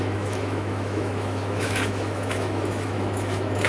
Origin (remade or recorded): remade